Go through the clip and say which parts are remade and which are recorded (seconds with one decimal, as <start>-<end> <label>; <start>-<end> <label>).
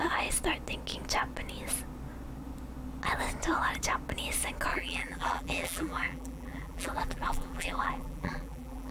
0.0-4.7 recorded; 4.7-8.9 remade